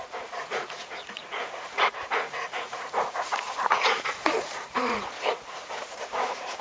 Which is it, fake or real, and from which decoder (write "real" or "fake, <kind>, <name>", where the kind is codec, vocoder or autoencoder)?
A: fake, vocoder, Vocos